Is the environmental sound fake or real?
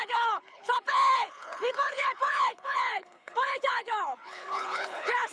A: fake